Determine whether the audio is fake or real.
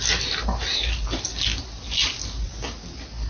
real